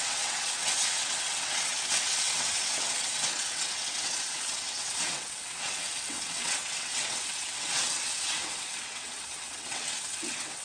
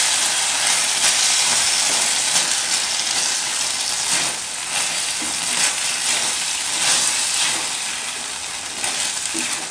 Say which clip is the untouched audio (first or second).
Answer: second